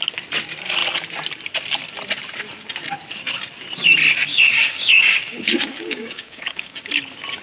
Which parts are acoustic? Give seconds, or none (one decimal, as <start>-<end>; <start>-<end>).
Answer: 0.0-4.3; 6.8-7.4